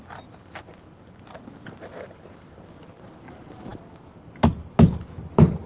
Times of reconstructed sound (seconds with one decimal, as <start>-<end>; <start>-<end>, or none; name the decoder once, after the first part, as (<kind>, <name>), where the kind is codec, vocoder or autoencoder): none